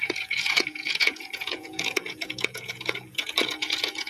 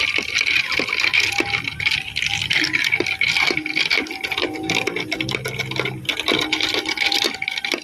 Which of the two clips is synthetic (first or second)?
first